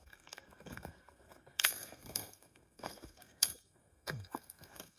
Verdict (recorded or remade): remade